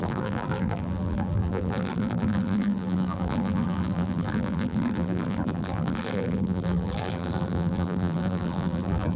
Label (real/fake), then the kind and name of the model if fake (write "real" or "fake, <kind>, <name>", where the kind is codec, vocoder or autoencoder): fake, vocoder, BigVGAN v2